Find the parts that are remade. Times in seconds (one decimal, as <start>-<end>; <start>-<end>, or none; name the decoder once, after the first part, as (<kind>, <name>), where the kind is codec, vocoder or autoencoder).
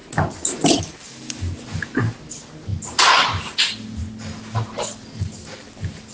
none